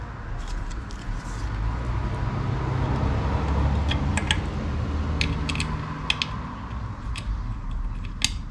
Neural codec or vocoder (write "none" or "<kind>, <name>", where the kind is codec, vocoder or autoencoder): none